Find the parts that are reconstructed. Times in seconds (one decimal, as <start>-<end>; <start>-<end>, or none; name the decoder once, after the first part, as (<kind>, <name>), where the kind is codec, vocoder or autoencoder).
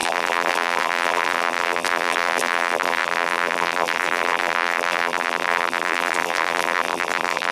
0.0-7.5 (vocoder, BigVGAN v2)